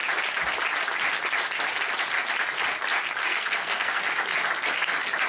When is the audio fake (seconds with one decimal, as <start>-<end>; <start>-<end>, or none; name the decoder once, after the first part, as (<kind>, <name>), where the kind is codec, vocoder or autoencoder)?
3.2-4.0 (codec, SNAC)